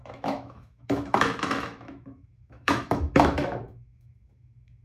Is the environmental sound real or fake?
fake